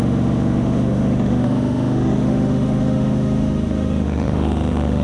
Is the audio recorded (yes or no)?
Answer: no